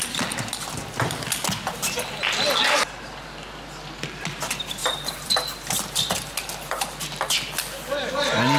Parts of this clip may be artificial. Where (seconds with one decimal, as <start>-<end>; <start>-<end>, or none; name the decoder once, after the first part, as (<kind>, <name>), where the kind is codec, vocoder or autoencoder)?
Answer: 4.8-8.1 (vocoder, BigVGAN v2)